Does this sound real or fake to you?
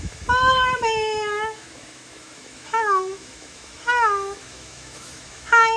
fake